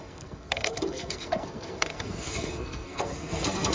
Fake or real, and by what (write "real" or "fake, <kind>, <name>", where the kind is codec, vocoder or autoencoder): fake, codec, SNAC